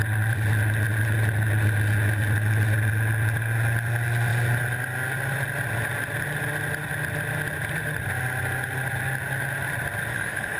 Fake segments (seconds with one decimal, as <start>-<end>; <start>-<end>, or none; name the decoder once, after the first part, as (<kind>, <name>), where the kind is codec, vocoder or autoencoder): 10.1-10.6 (autoencoder, DAC-VAE)